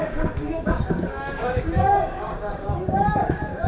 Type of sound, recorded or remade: remade